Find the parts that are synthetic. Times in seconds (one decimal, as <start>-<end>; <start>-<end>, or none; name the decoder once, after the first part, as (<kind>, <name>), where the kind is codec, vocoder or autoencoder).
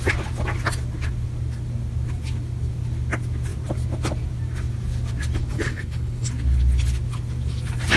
5.4-6.3 (codec, HILCodec)